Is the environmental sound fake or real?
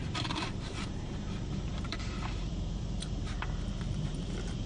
fake